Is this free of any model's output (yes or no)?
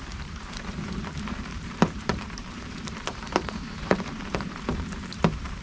no